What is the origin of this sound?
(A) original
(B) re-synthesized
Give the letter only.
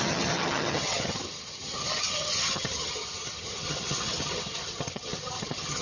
B